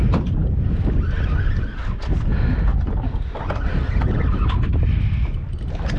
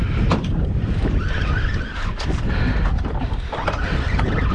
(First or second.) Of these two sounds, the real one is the first